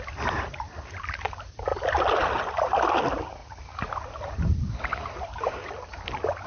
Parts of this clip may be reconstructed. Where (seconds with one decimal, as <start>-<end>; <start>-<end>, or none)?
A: none